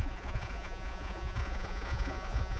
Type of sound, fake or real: fake